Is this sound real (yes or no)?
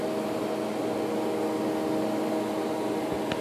yes